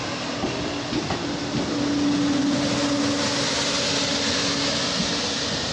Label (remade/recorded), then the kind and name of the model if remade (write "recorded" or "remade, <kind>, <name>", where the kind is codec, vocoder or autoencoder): recorded